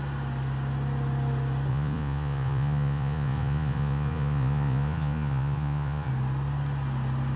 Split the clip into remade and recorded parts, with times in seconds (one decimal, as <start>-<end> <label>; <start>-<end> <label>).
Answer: 0.0-1.7 recorded; 1.7-6.1 remade; 6.1-7.4 recorded